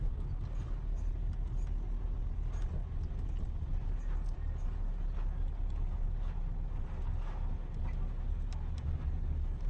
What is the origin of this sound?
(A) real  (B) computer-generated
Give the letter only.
A